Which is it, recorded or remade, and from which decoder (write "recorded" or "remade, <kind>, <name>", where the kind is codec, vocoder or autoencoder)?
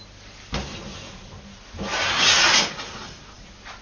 recorded